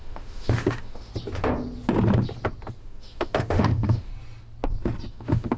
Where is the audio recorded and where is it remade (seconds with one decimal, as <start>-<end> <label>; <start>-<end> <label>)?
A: 0.0-1.1 remade; 1.1-2.8 recorded; 2.8-4.1 remade; 4.1-5.1 recorded; 5.1-5.6 remade